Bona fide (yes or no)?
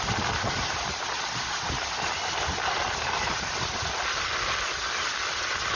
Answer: yes